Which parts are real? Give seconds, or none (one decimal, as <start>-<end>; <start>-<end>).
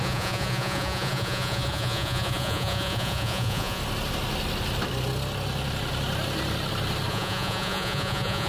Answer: 3.8-7.1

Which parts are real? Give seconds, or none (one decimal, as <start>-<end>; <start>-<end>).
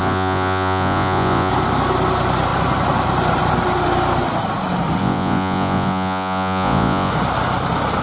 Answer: 1.5-5.0; 7.1-8.0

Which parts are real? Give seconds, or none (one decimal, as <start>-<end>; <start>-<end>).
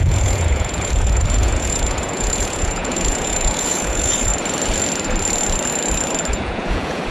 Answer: 4.3-6.3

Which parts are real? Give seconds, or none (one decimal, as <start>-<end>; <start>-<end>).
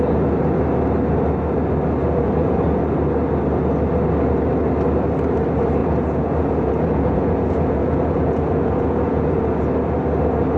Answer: 0.0-2.0; 2.6-5.8; 9.4-10.6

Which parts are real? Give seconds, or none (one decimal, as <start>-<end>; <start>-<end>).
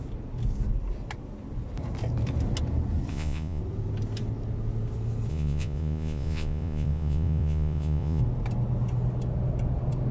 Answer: 0.0-3.1; 3.6-5.3; 8.2-10.1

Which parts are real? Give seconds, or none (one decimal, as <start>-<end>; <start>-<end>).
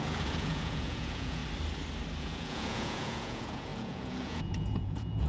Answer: 1.4-2.2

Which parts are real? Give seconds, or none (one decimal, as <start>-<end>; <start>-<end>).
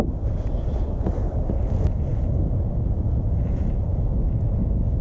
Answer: 0.0-2.1; 4.6-5.0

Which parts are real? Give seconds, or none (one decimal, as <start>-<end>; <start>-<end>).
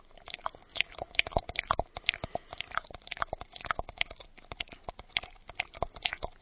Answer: 0.0-0.7; 1.3-6.4